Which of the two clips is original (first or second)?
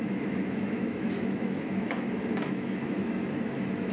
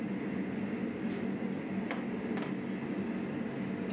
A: second